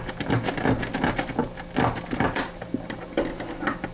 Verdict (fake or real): real